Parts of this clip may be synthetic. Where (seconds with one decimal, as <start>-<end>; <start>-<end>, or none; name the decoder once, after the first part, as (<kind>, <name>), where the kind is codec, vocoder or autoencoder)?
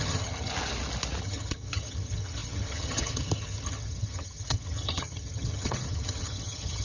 0.0-0.5 (vocoder, HiFi-GAN); 1.2-6.8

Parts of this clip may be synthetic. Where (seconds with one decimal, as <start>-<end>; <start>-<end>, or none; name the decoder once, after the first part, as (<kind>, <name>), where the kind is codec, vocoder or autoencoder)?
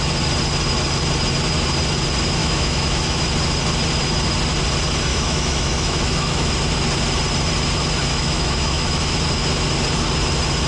2.4-3.2 (autoencoder, DAC-VAE); 5.1-6.5; 8.1-9.1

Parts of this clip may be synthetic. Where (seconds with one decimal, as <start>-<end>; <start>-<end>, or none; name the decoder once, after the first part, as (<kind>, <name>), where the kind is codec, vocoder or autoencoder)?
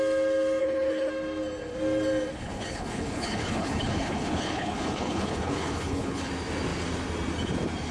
0.6-1.1 (codec, HILCodec); 2.3-6.3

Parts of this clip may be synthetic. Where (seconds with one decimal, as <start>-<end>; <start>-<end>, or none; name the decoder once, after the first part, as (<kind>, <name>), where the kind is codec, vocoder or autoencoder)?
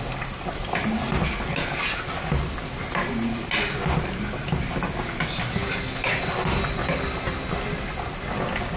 none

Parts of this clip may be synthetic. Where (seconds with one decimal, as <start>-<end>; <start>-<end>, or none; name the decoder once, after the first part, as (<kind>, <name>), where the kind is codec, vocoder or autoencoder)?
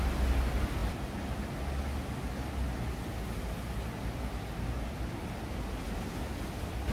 none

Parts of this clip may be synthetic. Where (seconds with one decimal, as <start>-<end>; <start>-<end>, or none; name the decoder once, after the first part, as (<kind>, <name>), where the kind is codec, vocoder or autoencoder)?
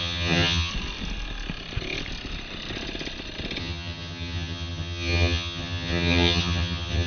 0.0-0.7 (vocoder, HiFi-GAN); 3.6-7.1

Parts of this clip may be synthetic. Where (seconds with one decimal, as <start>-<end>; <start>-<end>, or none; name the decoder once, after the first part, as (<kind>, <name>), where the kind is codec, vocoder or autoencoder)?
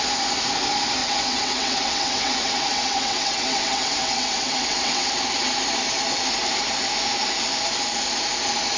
1.0-5.1 (vocoder, WaveNeXt)